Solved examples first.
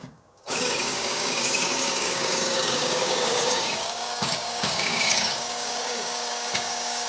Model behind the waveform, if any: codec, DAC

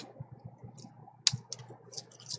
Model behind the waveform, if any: none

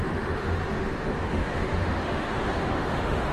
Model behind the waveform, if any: autoencoder, DAC-VAE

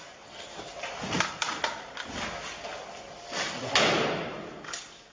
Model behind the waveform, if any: none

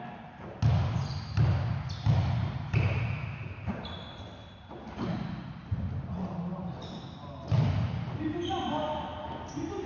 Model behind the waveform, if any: none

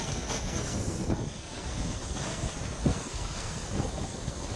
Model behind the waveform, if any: codec, SNAC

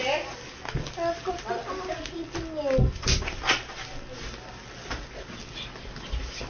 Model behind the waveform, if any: none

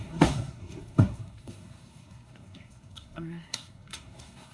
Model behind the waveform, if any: codec, SNAC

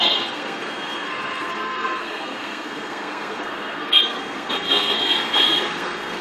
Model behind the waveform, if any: codec, SNAC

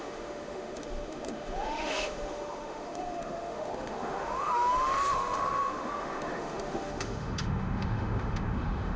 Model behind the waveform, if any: autoencoder, DAC-VAE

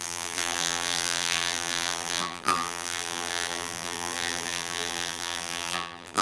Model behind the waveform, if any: vocoder, BigVGAN v2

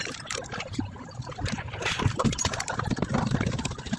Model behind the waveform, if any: vocoder, BigVGAN v2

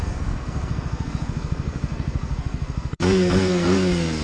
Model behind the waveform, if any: codec, SNAC